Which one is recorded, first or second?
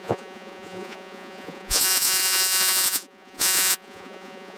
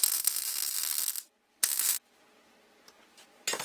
second